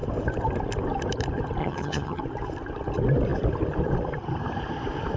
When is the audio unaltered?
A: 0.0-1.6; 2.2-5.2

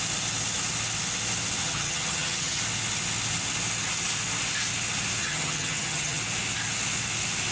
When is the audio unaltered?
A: 0.0-1.6; 2.6-5.2; 6.2-7.5

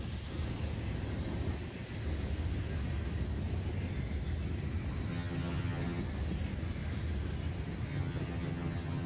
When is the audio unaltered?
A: 0.0-5.1; 6.0-7.9